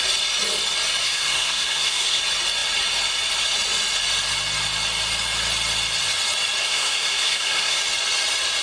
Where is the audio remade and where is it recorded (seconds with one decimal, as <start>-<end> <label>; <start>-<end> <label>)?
0.0-1.0 recorded; 1.0-2.2 remade; 2.2-6.6 recorded; 6.6-7.8 remade; 7.8-8.6 recorded